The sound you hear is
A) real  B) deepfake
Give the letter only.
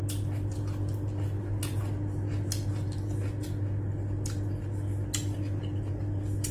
A